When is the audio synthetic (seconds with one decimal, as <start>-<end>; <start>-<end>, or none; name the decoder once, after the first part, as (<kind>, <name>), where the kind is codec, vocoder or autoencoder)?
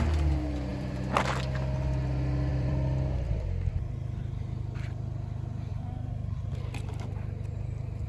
0.7-1.2 (vocoder, BigVGAN v2); 2.5-3.7